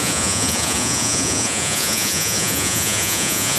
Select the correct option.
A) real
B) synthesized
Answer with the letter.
B